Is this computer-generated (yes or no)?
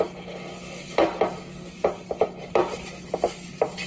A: no